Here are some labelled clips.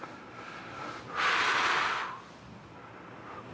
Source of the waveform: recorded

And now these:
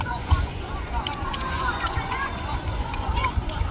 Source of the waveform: remade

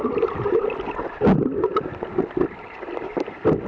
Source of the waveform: recorded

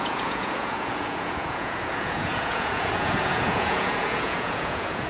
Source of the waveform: remade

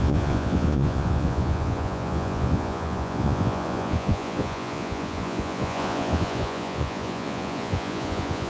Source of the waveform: remade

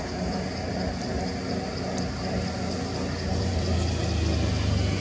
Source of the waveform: recorded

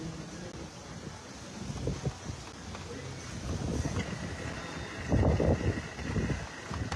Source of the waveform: recorded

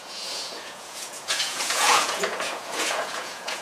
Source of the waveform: remade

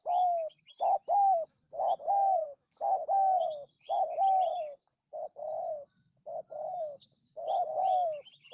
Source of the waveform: recorded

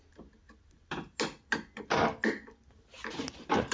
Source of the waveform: recorded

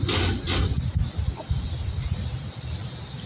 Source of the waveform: recorded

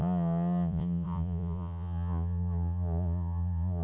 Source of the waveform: remade